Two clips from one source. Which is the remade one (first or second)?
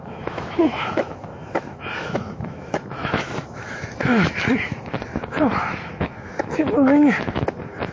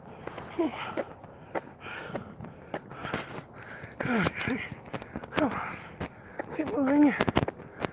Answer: first